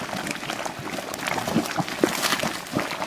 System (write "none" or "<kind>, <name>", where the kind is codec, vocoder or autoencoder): none